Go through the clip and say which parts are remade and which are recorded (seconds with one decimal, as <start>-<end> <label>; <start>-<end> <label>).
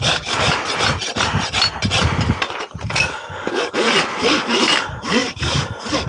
0.0-0.6 remade; 0.6-2.9 recorded; 2.9-6.1 remade